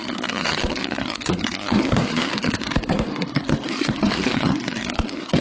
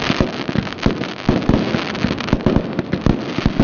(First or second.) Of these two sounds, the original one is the second